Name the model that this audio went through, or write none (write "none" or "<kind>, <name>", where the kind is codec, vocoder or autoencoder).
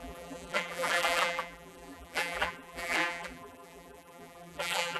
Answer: vocoder, BigVGAN v2